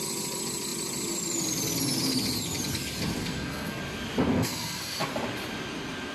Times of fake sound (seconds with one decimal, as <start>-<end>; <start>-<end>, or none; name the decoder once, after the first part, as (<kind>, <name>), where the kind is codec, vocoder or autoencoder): 3.2-3.8 (codec, SNAC); 4.3-5.1